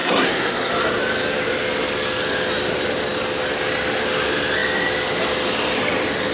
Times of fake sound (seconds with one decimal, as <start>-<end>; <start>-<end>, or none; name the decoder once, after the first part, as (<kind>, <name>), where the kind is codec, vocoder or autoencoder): 0.0-0.7 (codec, SNAC)